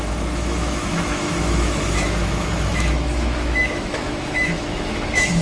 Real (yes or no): no